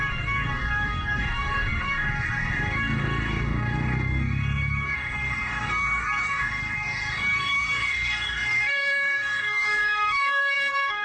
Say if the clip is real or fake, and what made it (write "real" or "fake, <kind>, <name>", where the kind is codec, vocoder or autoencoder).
fake, codec, DAC